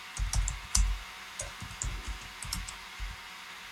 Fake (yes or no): no